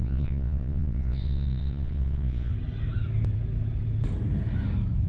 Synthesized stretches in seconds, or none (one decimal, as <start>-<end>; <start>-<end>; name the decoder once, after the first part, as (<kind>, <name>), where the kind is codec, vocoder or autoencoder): 0.0-2.5 (vocoder, Vocos)